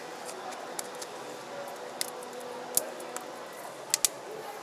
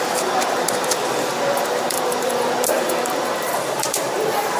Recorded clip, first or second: first